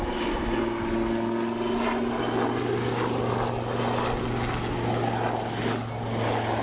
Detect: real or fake real